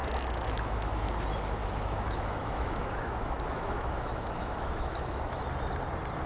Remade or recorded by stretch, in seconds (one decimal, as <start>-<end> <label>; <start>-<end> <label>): 0.0-1.1 remade; 1.1-1.6 recorded; 1.6-5.4 remade; 5.4-6.3 recorded